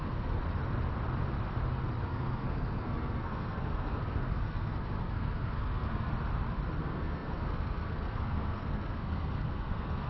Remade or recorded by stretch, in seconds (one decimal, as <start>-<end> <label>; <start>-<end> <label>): 0.0-0.4 remade; 0.4-2.0 recorded; 2.0-6.1 remade; 6.1-6.8 recorded; 6.8-10.1 remade